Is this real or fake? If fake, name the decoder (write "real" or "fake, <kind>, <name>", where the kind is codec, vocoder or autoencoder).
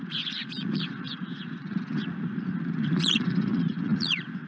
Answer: fake, vocoder, Vocos